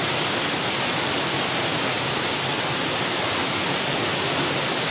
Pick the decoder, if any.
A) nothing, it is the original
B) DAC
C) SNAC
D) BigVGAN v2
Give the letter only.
A